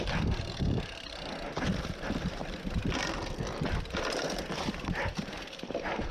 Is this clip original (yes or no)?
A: yes